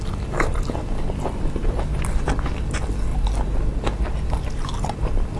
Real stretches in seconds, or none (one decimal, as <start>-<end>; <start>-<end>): 0.0-5.4